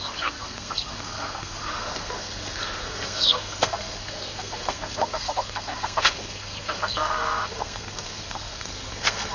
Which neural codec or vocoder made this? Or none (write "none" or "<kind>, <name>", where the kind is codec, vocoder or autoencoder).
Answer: codec, SNAC